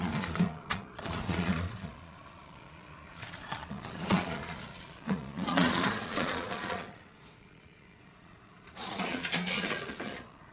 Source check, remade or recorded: remade